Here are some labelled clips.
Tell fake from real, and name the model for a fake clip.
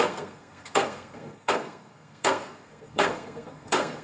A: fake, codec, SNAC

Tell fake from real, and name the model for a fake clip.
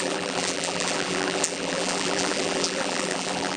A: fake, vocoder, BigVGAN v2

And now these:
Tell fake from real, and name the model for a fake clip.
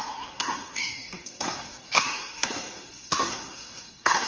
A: fake, codec, SNAC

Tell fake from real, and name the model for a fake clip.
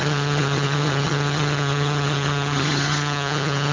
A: fake, vocoder, HiFi-GAN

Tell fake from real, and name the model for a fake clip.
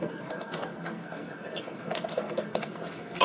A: fake, codec, SNAC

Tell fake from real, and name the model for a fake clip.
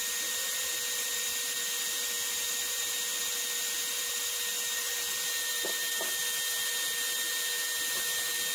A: real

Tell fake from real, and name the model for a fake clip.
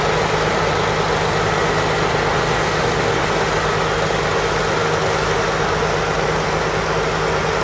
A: real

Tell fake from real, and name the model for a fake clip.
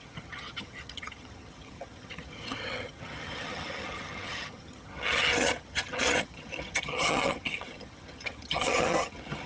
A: fake, vocoder, HiFi-GAN